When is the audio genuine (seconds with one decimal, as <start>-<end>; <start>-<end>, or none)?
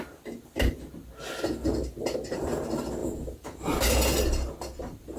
0.0-3.0; 3.6-5.2